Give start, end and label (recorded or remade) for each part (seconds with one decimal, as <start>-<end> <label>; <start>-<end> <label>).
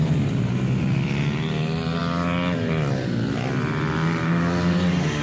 0.0-5.2 recorded